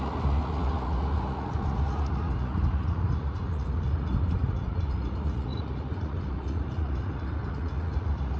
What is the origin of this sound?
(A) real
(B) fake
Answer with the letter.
B